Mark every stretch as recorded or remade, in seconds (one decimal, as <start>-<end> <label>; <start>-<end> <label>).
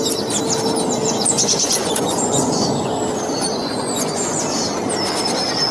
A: 0.0-1.0 recorded; 1.0-3.0 remade; 3.0-3.5 recorded; 3.5-4.4 remade; 4.4-5.7 recorded